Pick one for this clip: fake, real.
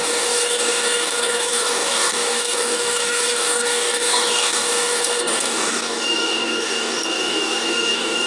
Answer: fake